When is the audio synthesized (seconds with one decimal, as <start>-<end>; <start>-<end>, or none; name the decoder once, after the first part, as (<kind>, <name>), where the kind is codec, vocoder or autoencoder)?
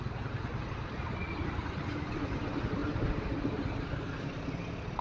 2.8-4.6 (vocoder, BigVGAN v2)